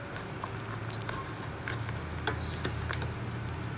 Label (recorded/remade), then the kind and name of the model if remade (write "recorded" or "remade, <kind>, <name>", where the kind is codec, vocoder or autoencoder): recorded